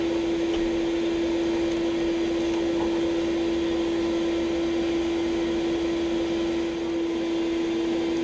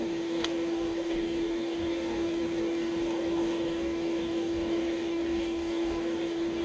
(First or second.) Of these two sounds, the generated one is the second